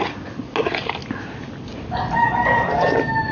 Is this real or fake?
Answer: real